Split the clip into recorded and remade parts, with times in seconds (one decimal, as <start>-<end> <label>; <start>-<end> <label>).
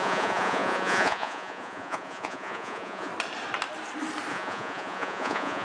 0.0-3.1 remade; 3.1-4.3 recorded; 4.3-5.6 remade